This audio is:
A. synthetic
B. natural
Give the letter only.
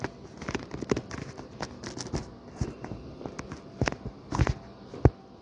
B